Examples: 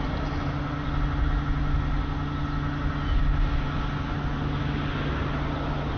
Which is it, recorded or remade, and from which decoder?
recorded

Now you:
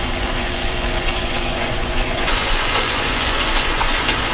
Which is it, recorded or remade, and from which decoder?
remade, vocoder, Vocos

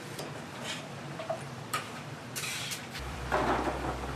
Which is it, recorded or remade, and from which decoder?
remade, vocoder, BigVGAN v2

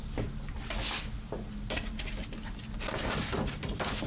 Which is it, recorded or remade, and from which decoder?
recorded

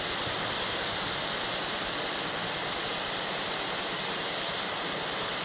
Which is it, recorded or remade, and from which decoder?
recorded